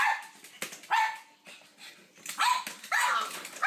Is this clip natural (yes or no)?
yes